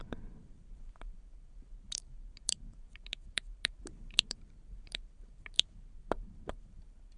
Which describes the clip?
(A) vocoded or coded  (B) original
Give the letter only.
A